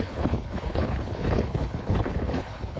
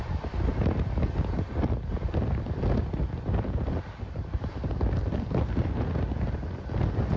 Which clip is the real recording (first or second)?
second